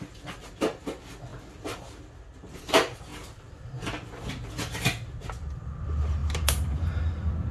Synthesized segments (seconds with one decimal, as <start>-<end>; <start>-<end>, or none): 3.1-3.7; 6.2-6.8